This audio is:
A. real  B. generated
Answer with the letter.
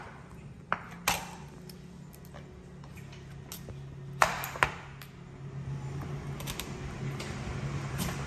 A